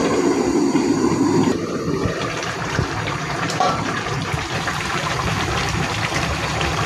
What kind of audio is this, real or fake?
fake